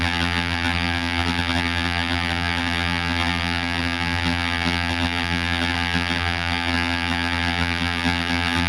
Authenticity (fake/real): fake